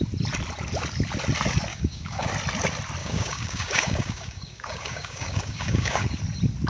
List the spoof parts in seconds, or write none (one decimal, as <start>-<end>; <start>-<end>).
1.7-2.3; 3.0-6.2